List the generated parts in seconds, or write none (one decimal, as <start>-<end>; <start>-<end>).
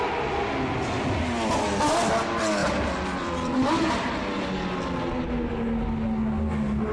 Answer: 2.6-4.1